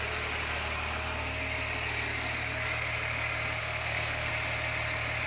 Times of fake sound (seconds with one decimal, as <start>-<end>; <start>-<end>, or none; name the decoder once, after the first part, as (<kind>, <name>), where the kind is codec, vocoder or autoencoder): 3.6-4.3 (codec, SNAC)